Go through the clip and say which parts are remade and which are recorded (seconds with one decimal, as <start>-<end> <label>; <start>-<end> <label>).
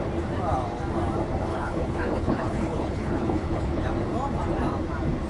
0.0-1.5 recorded; 1.5-3.8 remade; 3.8-5.3 recorded